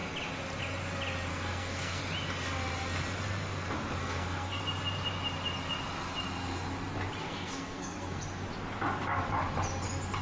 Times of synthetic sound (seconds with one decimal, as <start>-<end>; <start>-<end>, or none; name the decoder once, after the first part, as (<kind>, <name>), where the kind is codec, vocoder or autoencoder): 1.3-2.0 (codec, SNAC); 4.0-4.6; 7.2-8.2